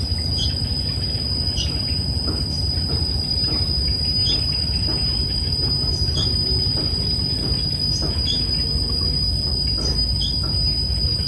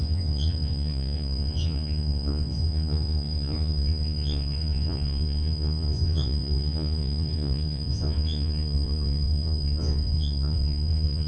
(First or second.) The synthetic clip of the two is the second